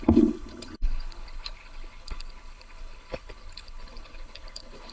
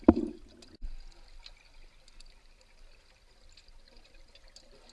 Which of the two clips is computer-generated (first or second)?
first